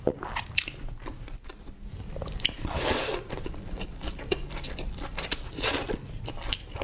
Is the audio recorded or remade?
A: recorded